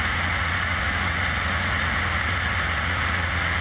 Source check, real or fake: fake